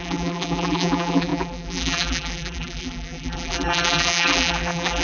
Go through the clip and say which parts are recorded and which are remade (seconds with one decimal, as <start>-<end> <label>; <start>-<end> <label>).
0.0-5.0 remade